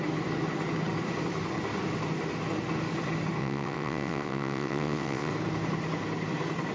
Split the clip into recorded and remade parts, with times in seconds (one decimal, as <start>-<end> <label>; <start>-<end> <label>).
0.0-3.4 recorded; 3.4-5.3 remade; 5.3-6.7 recorded